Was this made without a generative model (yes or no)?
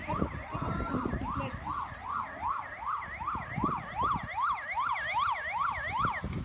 yes